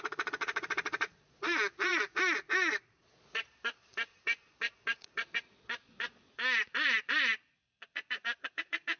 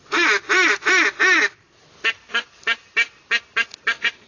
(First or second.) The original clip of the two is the second